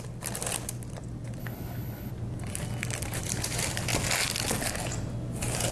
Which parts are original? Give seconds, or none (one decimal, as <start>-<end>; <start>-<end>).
0.0-1.4; 2.1-5.7